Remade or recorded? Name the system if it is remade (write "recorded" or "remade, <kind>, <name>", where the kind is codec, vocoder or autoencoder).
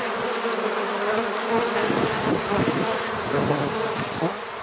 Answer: recorded